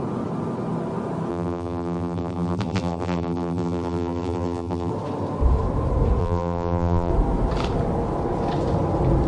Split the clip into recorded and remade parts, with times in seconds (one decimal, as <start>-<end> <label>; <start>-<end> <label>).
0.0-1.3 recorded; 1.3-4.9 remade; 4.9-6.2 recorded; 6.2-7.1 remade; 7.1-9.3 recorded